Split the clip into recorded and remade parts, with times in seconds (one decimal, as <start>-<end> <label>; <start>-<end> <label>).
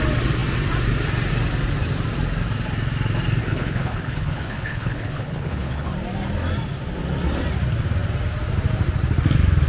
0.0-3.4 recorded; 3.4-5.9 remade; 5.9-9.7 recorded